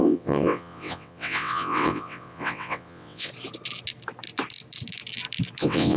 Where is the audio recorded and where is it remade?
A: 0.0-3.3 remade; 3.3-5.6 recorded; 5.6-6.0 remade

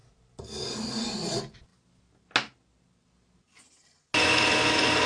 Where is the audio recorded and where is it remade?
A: 0.0-5.1 recorded

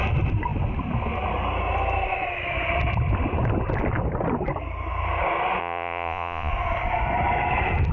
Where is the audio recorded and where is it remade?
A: 0.0-5.6 recorded; 5.6-6.5 remade; 6.5-7.9 recorded

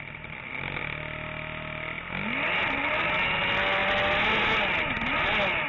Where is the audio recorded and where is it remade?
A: 0.0-5.7 recorded

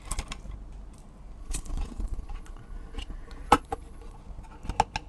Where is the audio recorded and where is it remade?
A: 0.0-1.4 recorded; 1.4-4.2 remade; 4.2-5.1 recorded